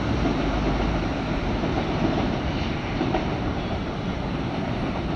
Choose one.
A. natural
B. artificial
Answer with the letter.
B